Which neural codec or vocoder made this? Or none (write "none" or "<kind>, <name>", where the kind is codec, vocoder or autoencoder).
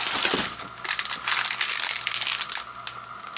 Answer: none